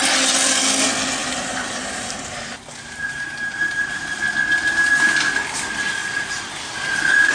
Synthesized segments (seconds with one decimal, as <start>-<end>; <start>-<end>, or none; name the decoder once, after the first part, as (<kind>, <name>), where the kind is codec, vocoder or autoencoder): 1.2-4.2 (vocoder, BigVGAN v2)